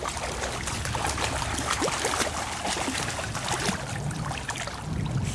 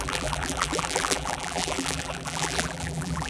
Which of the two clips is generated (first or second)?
second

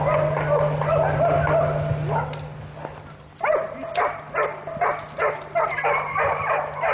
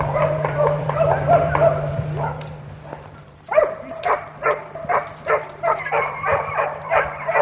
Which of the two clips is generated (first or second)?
second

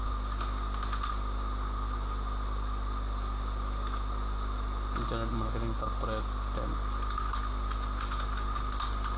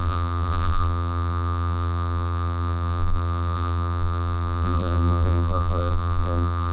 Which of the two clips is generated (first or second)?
second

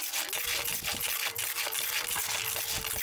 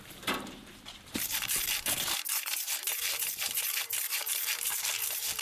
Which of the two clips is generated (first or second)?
second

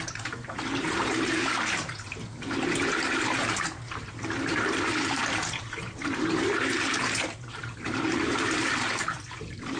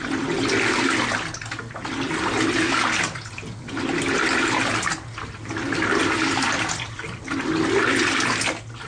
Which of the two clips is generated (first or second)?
first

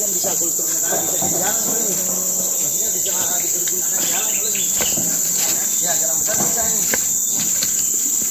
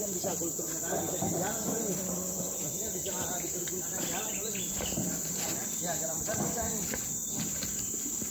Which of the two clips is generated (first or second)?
second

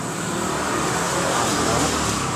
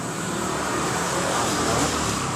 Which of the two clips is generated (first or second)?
second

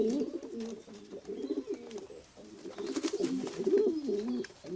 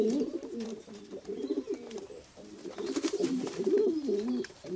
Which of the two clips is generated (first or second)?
second